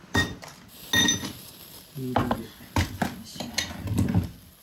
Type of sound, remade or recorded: recorded